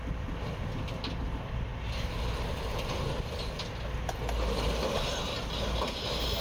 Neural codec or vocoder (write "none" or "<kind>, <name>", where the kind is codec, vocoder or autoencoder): none